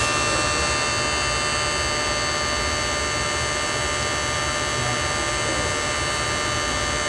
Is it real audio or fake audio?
real